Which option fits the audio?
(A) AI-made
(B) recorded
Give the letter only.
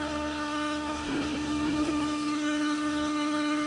A